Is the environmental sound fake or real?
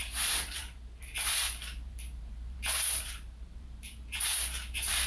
fake